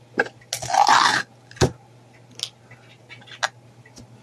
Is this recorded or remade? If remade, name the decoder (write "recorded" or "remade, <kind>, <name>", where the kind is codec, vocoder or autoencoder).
recorded